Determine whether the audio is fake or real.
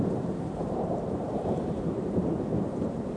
fake